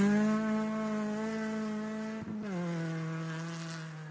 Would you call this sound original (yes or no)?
yes